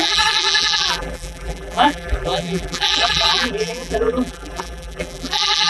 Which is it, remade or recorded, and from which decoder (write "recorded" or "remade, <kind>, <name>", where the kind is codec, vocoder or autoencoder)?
remade, vocoder, BigVGAN v2